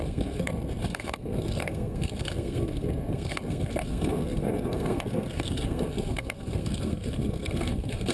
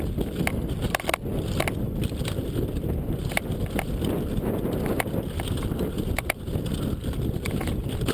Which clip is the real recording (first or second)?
second